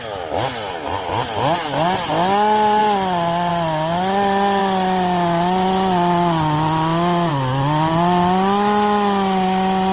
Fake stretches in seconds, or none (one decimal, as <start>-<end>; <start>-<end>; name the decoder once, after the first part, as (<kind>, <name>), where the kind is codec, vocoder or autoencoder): none